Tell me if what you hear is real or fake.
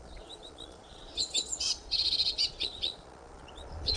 fake